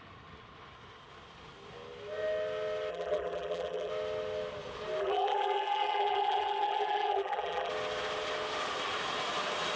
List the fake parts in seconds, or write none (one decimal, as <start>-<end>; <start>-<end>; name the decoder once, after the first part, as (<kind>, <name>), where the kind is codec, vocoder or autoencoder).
2.9-3.9 (vocoder, BigVGAN v2); 5.0-7.7